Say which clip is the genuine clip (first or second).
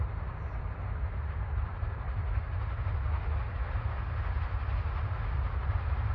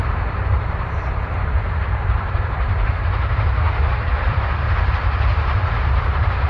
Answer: first